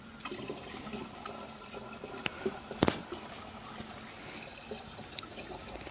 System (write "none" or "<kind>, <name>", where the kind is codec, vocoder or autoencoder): none